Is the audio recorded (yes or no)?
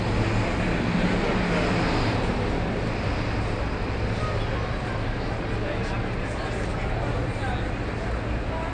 yes